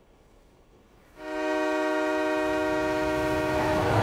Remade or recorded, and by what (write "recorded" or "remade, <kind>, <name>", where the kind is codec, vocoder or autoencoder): remade, autoencoder, DAC-VAE